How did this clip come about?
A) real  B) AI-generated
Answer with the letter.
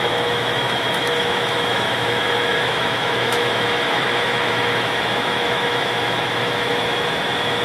B